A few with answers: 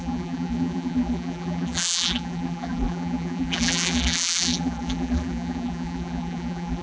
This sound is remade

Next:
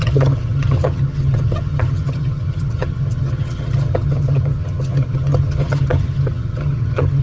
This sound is remade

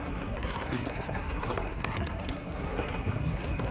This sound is remade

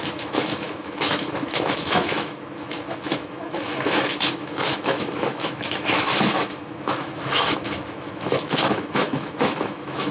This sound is remade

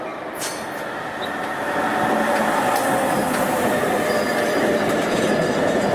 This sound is recorded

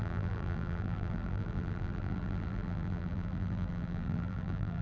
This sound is remade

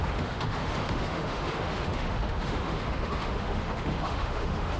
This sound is remade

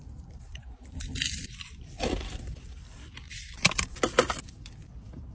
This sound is remade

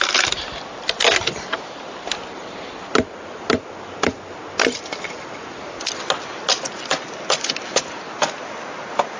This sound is recorded